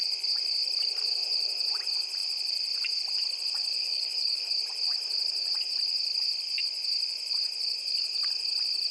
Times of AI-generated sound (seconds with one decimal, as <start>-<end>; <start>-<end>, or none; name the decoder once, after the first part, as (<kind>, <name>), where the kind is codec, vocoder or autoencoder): 3.8-4.5 (codec, HILCodec)